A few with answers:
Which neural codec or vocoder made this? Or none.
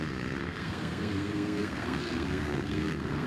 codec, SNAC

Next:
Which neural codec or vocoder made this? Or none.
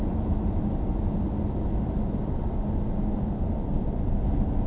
none